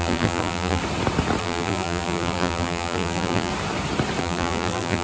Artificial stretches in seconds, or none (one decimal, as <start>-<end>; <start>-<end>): 0.0-0.8; 1.4-3.5; 4.2-5.0